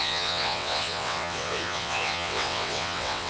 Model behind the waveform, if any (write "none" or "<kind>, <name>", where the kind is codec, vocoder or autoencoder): vocoder, WaveNeXt